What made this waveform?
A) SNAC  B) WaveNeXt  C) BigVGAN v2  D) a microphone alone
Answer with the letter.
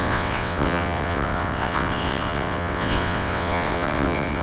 B